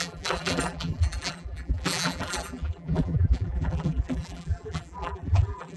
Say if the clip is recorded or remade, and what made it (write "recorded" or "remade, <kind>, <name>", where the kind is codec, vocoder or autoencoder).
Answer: remade, vocoder, BigVGAN v2